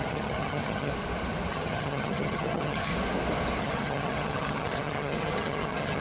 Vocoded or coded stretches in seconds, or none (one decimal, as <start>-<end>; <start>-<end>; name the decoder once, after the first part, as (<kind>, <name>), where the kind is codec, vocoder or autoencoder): 0.0-0.9 (vocoder, HiFi-GAN); 1.5-2.9; 3.6-6.0